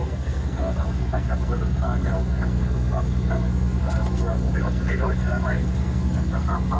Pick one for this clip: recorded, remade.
remade